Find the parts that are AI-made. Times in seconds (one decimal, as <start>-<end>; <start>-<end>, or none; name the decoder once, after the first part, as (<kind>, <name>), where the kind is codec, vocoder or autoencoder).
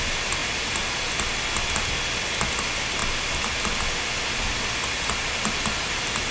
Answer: none